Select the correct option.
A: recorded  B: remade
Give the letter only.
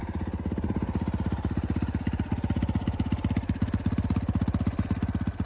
A